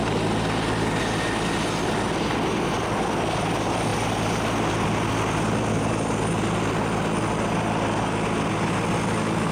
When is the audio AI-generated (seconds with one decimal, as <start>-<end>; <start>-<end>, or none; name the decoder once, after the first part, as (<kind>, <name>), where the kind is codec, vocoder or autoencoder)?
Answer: none